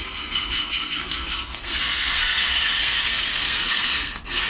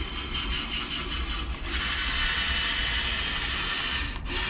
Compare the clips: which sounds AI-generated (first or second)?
first